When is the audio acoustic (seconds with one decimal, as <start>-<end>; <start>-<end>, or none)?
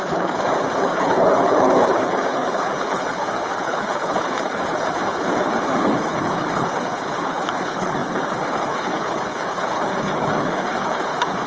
none